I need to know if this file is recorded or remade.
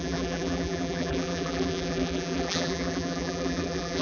remade